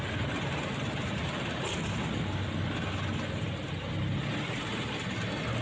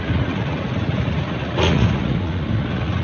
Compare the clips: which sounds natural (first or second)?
first